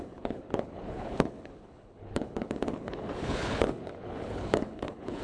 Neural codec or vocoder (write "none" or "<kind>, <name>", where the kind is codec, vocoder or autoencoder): codec, HILCodec